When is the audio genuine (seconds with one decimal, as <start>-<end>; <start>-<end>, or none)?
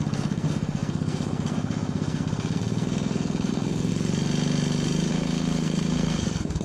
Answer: 3.9-5.1